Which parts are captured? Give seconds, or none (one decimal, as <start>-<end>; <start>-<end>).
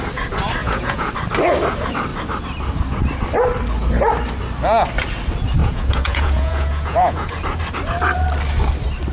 0.0-0.6; 1.1-5.6; 7.3-9.1